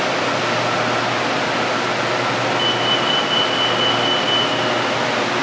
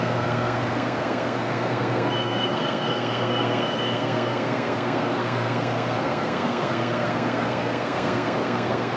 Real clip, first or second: first